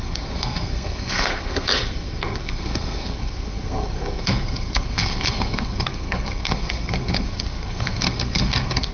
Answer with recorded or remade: remade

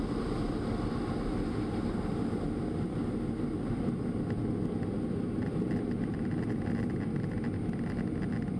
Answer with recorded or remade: recorded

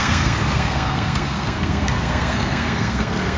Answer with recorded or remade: remade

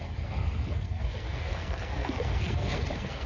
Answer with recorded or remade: remade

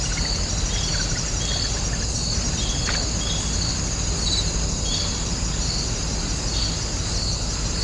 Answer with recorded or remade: recorded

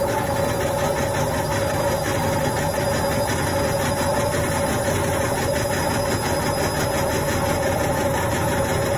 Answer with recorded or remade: recorded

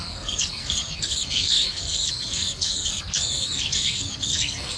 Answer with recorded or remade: remade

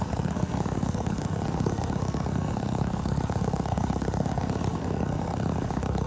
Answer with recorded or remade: remade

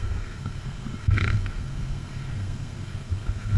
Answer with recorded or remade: remade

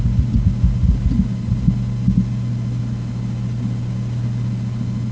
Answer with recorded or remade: recorded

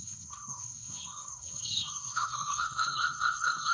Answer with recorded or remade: remade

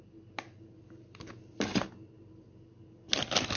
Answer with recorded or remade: recorded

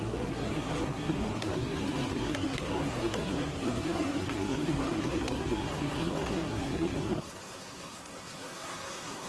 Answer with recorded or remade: remade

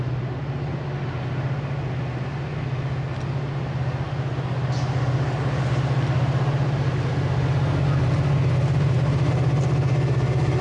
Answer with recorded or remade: recorded